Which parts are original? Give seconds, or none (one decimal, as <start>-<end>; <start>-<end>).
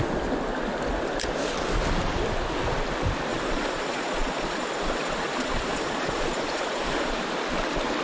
0.0-3.3; 7.1-8.0